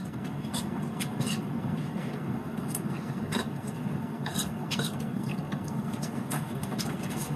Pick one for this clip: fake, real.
fake